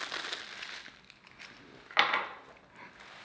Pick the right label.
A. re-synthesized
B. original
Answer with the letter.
B